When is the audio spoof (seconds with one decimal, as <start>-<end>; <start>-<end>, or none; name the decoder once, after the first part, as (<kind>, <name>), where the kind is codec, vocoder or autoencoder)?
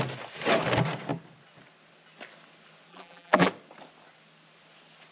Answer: 2.9-3.5 (vocoder, BigVGAN v2)